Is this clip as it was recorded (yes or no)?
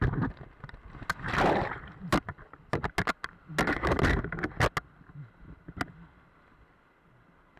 yes